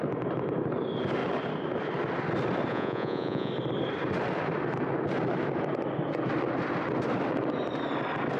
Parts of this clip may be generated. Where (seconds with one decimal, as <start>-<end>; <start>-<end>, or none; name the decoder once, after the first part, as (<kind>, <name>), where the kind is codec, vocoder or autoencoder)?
2.7-3.5 (vocoder, Vocos)